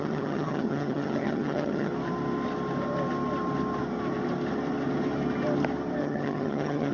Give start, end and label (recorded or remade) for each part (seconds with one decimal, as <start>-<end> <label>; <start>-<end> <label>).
0.0-1.9 remade; 1.9-6.0 recorded; 6.0-6.9 remade